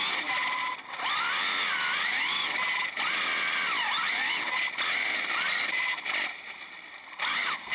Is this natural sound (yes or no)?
yes